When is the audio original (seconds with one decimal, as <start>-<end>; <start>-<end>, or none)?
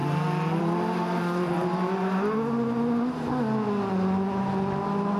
0.0-0.6; 2.0-5.2